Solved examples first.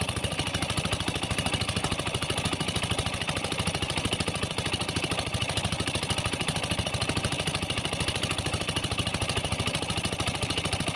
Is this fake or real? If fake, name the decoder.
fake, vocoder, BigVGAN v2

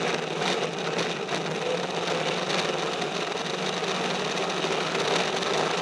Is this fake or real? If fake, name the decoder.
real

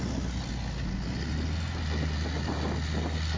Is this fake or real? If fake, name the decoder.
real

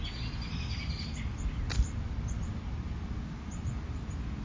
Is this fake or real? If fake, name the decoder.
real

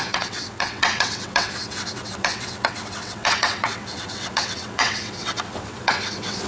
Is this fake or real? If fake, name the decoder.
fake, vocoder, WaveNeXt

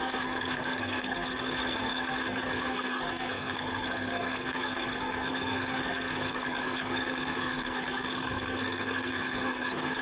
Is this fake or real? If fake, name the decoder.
fake, codec, SNAC